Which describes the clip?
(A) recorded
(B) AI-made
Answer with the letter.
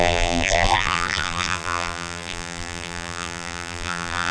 B